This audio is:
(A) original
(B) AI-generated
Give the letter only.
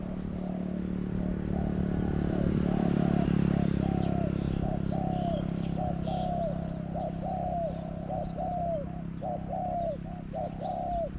A